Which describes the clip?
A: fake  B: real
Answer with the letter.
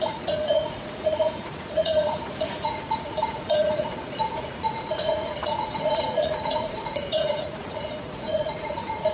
A